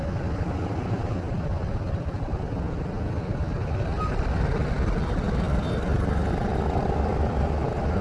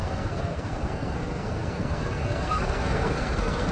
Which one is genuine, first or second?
first